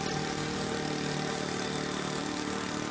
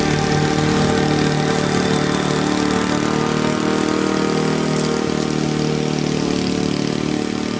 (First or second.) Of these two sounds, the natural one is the second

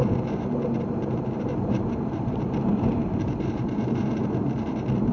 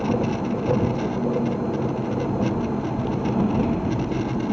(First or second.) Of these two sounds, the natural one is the second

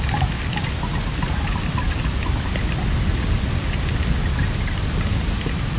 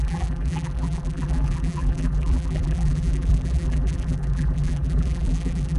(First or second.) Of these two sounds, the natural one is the first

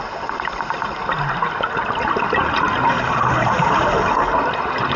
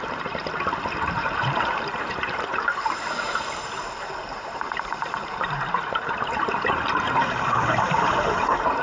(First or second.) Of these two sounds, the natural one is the first